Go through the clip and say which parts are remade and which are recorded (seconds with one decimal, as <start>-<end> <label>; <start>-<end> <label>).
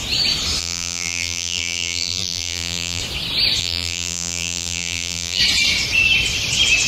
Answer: 0.0-0.6 recorded; 0.6-3.0 remade; 3.0-3.6 recorded; 3.6-5.4 remade; 5.4-6.9 recorded